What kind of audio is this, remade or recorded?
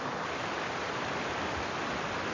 recorded